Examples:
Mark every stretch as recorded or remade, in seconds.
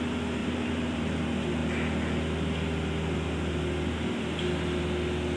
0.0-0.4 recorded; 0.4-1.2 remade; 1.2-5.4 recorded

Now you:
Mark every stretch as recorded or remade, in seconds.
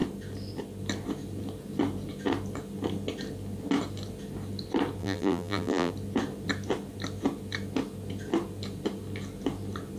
0.0-5.0 recorded; 5.0-5.9 remade; 5.9-10.0 recorded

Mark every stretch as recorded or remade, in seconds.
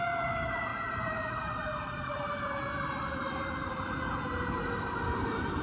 0.0-0.7 remade; 0.7-1.3 recorded; 1.3-5.6 remade